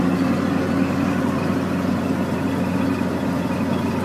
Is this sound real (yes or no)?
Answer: yes